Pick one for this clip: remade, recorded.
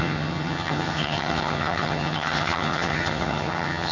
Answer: remade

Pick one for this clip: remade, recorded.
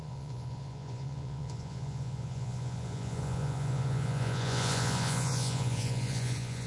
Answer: remade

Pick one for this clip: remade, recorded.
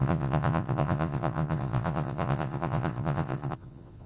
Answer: remade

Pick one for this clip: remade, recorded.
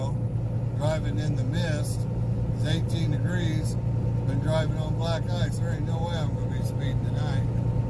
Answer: recorded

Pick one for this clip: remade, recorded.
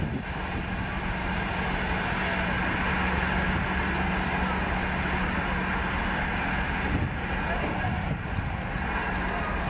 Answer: recorded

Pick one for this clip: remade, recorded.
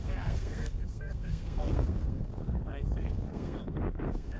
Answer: remade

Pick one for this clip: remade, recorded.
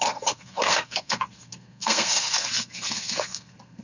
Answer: remade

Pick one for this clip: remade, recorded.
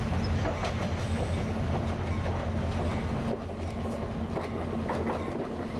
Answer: recorded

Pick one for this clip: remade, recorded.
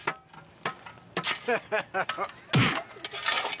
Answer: recorded